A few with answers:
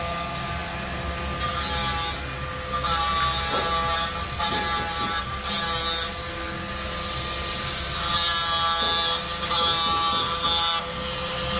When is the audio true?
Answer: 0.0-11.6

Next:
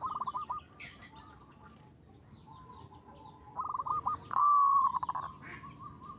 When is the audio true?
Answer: 0.0-6.2